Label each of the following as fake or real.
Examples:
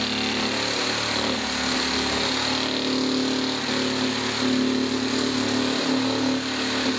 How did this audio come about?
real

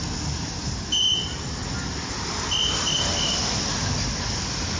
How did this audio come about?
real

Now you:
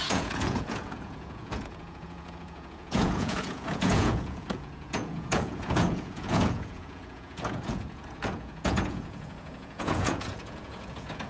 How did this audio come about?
fake